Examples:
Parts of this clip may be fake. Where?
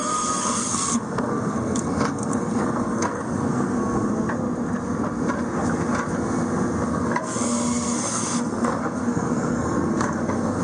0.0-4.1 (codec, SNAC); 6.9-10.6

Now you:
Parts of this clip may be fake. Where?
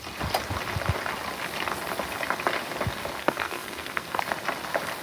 3.2-4.2 (codec, SNAC)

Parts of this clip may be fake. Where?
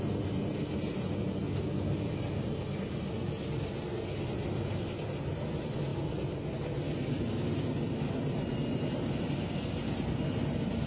none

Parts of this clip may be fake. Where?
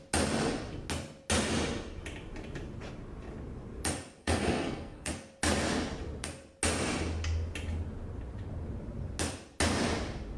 4.2-5.1 (codec, SNAC)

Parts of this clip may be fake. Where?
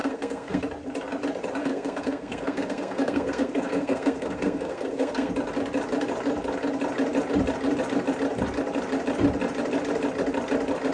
0.0-0.6 (codec, SNAC); 1.6-5.3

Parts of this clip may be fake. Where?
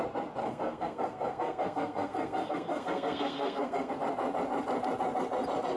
0.4-3.9 (codec, SNAC)